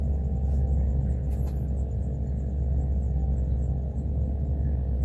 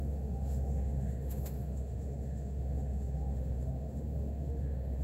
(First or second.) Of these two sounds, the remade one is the second